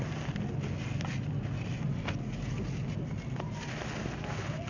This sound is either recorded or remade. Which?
recorded